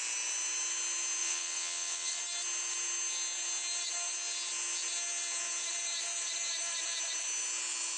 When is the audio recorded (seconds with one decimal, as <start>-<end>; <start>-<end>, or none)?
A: 0.0-1.2; 2.2-8.0